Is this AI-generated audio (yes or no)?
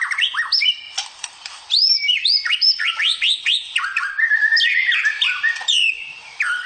yes